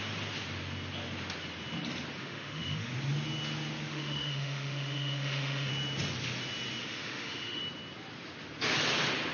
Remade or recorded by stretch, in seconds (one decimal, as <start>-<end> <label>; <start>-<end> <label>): 0.0-2.2 recorded; 2.2-2.9 remade; 2.9-3.9 recorded; 3.9-5.7 remade; 5.7-6.8 recorded; 6.8-7.6 remade; 7.6-9.3 recorded